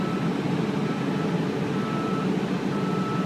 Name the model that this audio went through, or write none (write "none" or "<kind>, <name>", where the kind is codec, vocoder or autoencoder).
none